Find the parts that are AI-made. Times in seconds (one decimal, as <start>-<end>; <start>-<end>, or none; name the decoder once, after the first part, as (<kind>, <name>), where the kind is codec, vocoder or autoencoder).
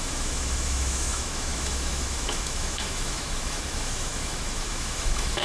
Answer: 0.0-5.4 (autoencoder, DAC-VAE)